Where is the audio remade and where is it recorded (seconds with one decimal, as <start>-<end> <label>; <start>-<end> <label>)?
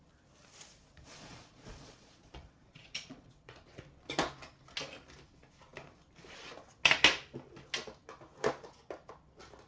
0.0-0.7 recorded; 0.7-3.8 remade; 3.8-9.7 recorded